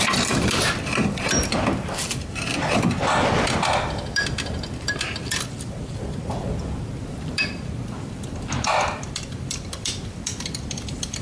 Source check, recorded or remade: remade